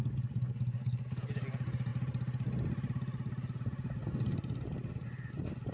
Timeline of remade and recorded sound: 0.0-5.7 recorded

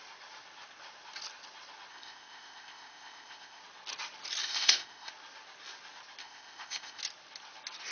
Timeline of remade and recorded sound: 0.0-1.9 recorded; 1.9-3.6 remade; 3.6-4.4 recorded; 4.4-5.1 remade; 5.1-6.2 recorded; 6.2-7.0 remade; 7.0-7.9 recorded